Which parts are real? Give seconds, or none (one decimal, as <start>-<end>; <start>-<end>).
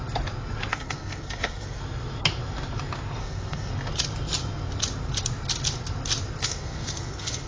0.0-0.7; 1.8-3.2; 3.7-6.4